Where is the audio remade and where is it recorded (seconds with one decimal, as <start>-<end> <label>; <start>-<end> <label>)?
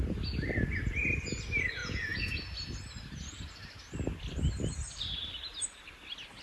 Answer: 0.0-1.8 recorded; 1.8-2.4 remade; 2.4-6.4 recorded